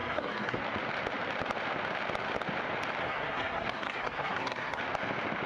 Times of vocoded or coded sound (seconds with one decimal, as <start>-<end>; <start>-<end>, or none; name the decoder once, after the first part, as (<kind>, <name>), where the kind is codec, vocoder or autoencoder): 0.0-0.6 (codec, SNAC); 3.0-4.8